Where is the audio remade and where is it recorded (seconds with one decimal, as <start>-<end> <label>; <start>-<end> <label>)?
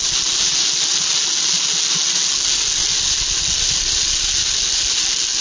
0.0-5.4 recorded